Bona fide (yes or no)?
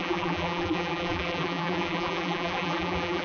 no